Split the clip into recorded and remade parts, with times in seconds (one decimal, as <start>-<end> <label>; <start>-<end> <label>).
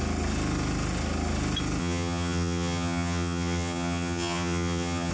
0.0-1.8 recorded; 1.8-5.1 remade